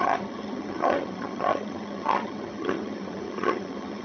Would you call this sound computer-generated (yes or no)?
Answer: yes